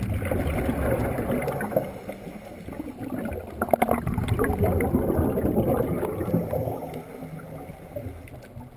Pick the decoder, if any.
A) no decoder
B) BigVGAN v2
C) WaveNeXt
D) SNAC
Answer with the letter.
A